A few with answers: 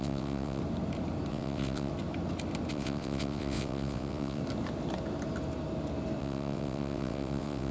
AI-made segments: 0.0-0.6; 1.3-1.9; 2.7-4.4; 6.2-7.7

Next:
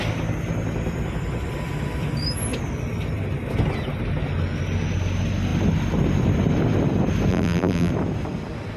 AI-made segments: 7.3-7.9

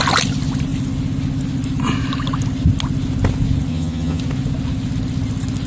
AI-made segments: 3.7-4.2

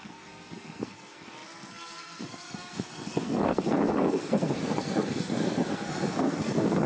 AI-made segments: 0.0-6.9